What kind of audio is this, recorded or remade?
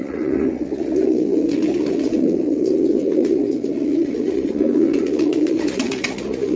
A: remade